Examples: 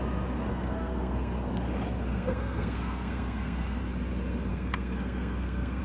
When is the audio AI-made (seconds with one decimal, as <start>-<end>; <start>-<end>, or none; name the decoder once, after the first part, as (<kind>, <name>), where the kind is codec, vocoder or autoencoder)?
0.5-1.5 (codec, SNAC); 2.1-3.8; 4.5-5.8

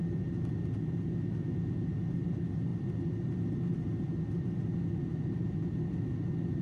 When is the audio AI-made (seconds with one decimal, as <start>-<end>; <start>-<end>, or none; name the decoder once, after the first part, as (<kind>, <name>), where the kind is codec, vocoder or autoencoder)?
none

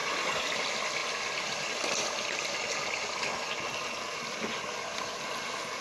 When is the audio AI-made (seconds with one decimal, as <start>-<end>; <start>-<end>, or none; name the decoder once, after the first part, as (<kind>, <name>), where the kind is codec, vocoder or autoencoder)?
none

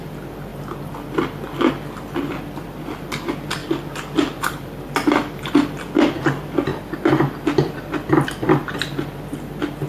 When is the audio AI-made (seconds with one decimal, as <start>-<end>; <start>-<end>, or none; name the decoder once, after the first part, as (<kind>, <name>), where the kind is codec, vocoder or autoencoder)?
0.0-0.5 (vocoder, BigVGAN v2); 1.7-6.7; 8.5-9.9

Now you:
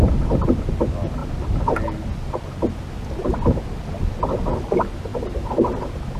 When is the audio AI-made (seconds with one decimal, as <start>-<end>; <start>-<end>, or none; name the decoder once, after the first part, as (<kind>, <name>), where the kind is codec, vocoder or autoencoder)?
5.1-6.2 (vocoder, BigVGAN v2)

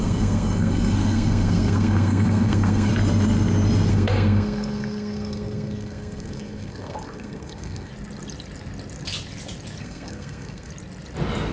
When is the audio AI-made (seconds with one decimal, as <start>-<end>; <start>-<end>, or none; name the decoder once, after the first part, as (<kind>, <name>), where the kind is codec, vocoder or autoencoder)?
0.0-2.9 (codec, SNAC); 3.9-7.9; 9.8-10.7

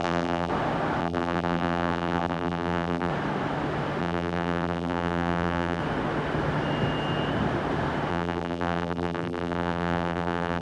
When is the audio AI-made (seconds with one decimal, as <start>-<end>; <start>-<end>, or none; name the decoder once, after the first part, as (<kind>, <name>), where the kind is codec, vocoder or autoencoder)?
0.0-0.5 (vocoder, BigVGAN v2); 1.0-3.1; 4.0-5.8; 8.1-10.6

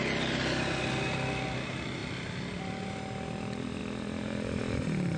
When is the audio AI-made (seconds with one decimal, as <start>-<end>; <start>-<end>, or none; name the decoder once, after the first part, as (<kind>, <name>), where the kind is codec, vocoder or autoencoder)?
2.0-3.0 (vocoder, BigVGAN v2)